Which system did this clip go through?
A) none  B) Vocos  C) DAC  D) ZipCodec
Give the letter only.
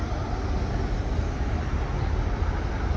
A